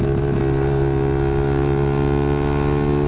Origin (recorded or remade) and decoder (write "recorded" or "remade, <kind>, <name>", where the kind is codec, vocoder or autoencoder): recorded